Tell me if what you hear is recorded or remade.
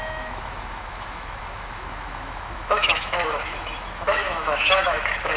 remade